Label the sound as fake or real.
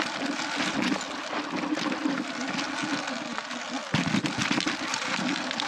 real